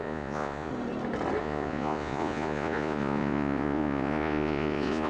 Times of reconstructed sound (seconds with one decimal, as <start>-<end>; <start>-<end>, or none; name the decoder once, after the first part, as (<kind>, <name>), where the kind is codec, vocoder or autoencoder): 0.0-0.7 (vocoder, Vocos); 1.4-5.1